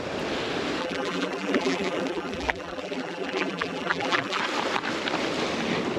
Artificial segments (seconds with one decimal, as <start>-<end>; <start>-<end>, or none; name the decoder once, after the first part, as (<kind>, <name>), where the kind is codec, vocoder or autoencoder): 0.8-4.4 (vocoder, BigVGAN v2)